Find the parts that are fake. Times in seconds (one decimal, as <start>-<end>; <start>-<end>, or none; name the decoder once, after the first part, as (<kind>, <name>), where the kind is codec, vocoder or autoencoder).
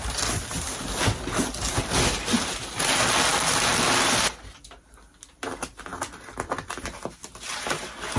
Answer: none